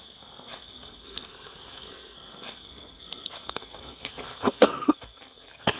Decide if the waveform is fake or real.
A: fake